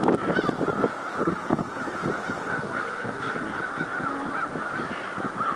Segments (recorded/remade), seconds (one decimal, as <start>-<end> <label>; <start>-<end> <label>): 0.0-1.2 recorded; 1.2-1.8 remade; 1.8-2.4 recorded; 2.4-3.6 remade; 3.6-5.6 recorded